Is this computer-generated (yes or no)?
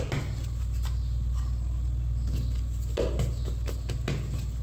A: no